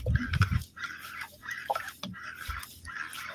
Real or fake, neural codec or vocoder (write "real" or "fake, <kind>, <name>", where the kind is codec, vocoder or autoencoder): real